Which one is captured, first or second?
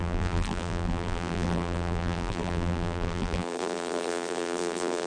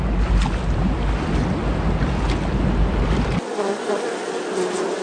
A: second